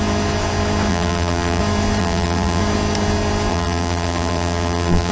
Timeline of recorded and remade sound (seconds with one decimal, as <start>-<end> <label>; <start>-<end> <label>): 0.0-0.9 recorded; 0.9-1.6 remade; 1.6-2.0 recorded; 2.0-2.6 remade; 2.6-3.5 recorded; 3.5-5.1 remade